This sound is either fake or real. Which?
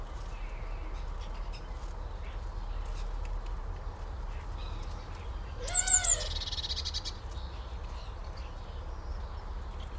real